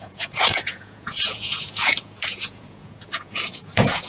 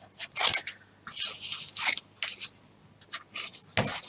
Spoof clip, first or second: first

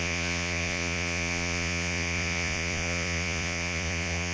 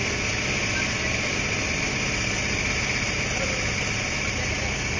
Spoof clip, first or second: first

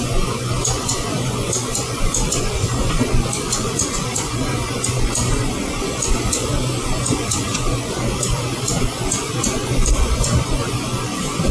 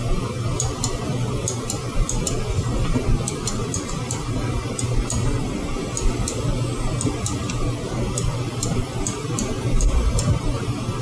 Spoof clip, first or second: first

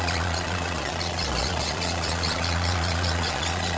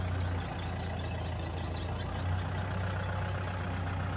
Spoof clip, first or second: first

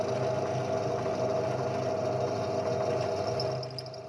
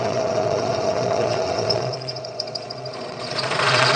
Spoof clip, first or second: second